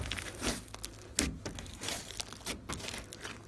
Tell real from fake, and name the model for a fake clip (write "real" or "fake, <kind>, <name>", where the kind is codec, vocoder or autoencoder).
real